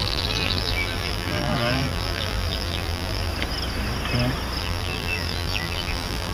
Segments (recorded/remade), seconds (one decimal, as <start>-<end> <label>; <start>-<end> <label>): 0.0-3.3 remade; 3.3-4.6 recorded; 4.6-6.3 remade